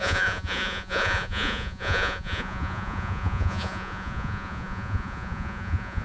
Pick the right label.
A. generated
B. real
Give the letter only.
A